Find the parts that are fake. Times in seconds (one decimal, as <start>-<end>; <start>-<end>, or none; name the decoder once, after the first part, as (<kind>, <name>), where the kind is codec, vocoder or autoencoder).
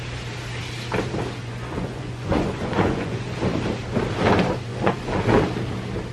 1.4-3.4 (vocoder, Vocos); 4.7-5.2